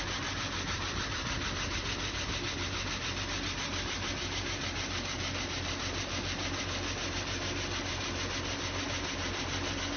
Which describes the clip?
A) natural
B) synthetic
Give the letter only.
A